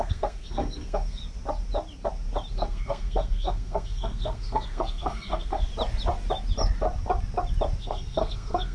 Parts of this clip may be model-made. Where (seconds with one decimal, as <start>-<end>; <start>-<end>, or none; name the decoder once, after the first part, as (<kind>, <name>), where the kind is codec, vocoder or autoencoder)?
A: 0.0-1.2 (codec, SNAC); 2.5-5.7; 7.8-8.7

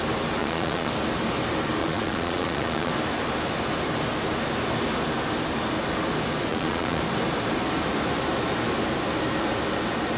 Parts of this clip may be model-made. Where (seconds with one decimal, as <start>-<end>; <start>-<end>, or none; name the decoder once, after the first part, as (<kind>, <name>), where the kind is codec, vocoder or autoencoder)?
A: 0.4-0.9 (vocoder, Vocos); 1.8-2.9; 6.5-7.0